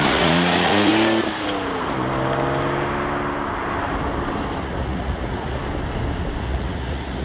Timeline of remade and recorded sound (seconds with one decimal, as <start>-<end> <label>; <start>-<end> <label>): 0.0-0.9 remade; 0.9-4.6 recorded; 4.6-5.6 remade; 5.6-6.4 recorded; 6.4-7.2 remade